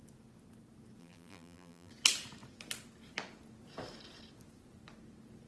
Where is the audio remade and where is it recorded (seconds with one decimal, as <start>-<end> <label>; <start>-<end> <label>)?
0.0-1.0 recorded; 1.0-1.9 remade; 1.9-5.5 recorded